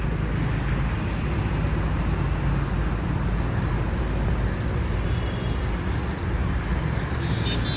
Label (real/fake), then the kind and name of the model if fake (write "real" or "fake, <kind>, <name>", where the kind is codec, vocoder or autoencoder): real